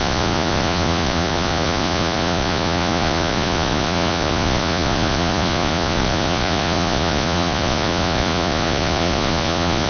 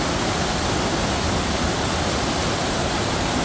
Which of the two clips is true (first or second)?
second